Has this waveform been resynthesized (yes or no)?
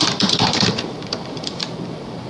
yes